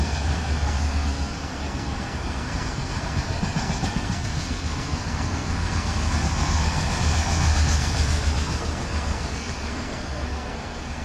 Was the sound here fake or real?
fake